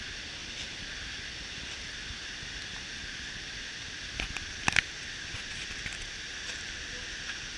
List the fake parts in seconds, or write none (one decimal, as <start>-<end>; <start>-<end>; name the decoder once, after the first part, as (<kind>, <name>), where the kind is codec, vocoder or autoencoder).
none